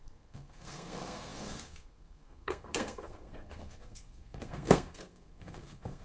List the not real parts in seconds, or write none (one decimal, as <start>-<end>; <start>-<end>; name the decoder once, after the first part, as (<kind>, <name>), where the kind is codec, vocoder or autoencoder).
0.0-6.0 (codec, SNAC)

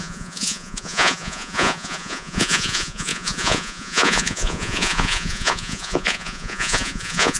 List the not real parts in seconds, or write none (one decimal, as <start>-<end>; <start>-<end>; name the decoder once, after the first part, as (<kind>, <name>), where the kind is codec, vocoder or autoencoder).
0.0-7.4 (vocoder, Vocos)

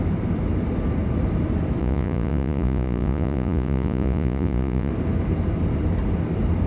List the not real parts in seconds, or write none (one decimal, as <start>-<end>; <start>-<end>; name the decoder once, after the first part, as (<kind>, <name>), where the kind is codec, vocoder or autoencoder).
1.8-4.9 (vocoder, Vocos)

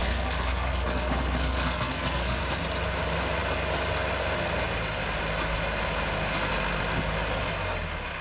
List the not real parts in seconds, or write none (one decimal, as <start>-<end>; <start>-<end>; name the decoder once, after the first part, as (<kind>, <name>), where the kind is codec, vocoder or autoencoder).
0.0-2.4 (codec, SNAC)

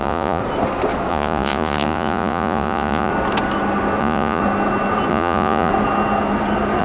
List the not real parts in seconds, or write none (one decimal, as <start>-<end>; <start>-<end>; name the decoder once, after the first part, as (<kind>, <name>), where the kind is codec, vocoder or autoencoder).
0.0-0.4 (vocoder, Vocos); 1.1-3.1; 4.0-4.4; 5.1-5.7